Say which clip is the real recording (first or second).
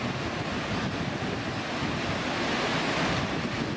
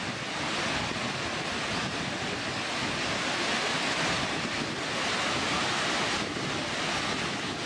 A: first